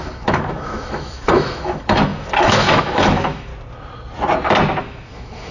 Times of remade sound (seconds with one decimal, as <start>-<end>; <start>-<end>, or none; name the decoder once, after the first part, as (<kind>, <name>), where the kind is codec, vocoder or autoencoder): 0.0-3.5 (autoencoder, DAC-VAE); 4.8-5.5

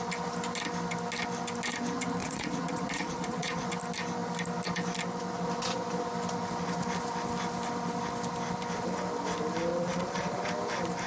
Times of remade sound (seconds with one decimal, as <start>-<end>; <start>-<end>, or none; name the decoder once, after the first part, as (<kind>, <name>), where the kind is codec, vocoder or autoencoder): 2.2-3.7 (vocoder, Vocos); 9.7-10.5

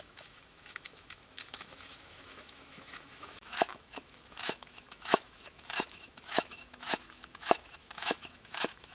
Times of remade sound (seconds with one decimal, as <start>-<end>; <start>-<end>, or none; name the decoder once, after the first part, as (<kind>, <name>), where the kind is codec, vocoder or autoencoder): 0.0-8.9 (autoencoder, DAC-VAE)

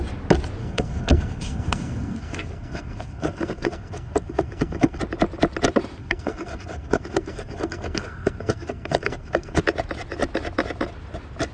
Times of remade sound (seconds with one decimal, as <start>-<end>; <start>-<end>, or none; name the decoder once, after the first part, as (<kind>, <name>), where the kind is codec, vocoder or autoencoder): 0.6-5.0 (codec, SNAC); 6.0-9.6

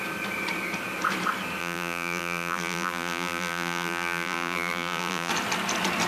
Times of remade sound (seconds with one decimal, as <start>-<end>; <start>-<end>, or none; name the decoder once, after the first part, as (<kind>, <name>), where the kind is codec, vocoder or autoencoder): 1.6-5.3 (vocoder, BigVGAN v2)

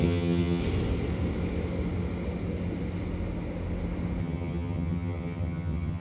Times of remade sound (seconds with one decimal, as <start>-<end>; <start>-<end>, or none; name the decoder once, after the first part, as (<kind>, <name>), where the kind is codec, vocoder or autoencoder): 0.0-0.6 (vocoder, HiFi-GAN); 4.2-6.0

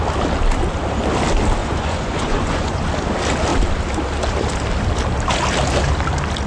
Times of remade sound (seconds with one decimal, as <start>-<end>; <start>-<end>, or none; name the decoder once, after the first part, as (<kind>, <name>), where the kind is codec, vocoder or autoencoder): 1.6-2.8 (vocoder, Vocos)

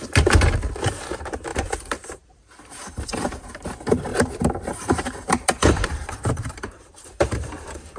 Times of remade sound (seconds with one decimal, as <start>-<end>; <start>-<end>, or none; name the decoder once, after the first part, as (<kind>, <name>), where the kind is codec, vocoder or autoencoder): 1.5-3.3 (vocoder, BigVGAN v2); 4.1-8.0